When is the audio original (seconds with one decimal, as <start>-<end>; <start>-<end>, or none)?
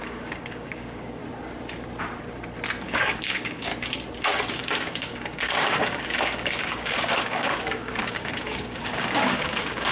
1.2-2.8; 3.7-4.5